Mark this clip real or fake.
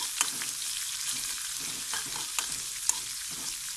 real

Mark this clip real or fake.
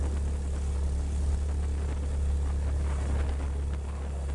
real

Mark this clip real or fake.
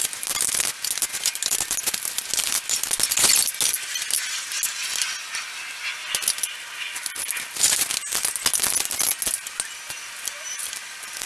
real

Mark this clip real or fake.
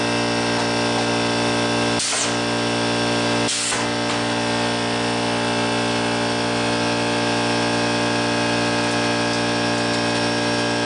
real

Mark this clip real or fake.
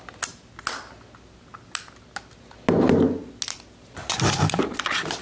real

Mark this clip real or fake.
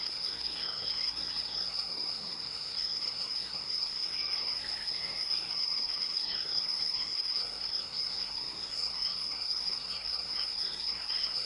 fake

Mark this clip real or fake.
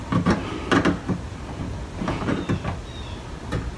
real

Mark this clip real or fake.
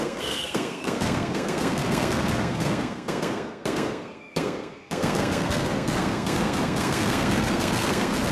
fake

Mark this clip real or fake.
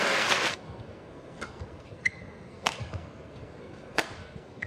fake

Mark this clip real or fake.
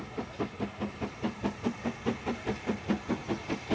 real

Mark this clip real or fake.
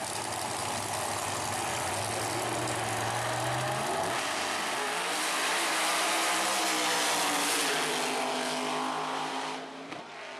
real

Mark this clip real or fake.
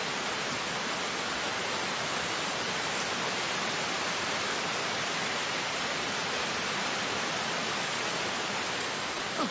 real